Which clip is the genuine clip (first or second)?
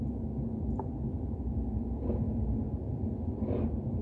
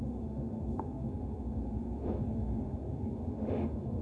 first